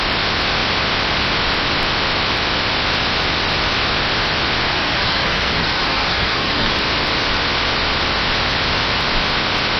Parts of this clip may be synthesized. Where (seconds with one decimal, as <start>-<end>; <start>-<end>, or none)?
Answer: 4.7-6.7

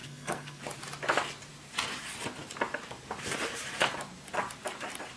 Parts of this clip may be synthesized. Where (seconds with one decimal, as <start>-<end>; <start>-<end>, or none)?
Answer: 0.0-0.6

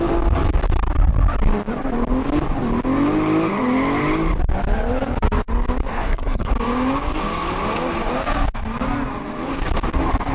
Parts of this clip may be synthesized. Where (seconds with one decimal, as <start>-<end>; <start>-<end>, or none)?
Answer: 5.9-6.5

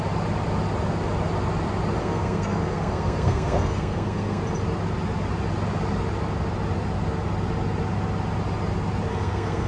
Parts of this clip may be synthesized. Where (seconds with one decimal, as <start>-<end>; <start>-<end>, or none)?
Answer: 2.0-4.4; 9.1-9.7